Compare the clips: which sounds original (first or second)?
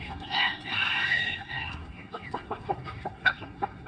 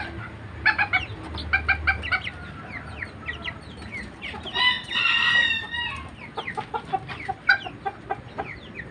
second